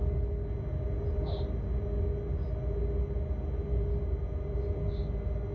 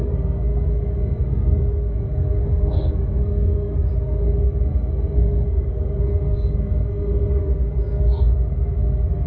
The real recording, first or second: first